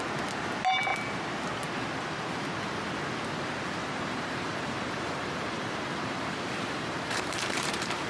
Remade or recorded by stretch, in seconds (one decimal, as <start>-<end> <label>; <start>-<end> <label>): 0.0-3.8 recorded; 3.8-8.1 remade